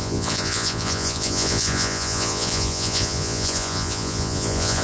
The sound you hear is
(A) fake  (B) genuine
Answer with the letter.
A